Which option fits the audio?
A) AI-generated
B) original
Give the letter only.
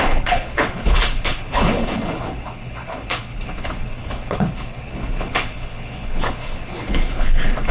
A